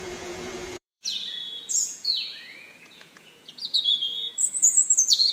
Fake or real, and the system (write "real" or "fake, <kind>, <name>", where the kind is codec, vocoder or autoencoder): fake, vocoder, Vocos